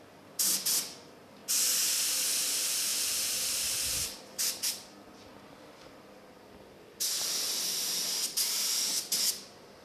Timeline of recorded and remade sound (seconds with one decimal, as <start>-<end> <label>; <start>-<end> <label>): 0.0-5.3 remade; 5.3-8.2 recorded; 8.2-9.8 remade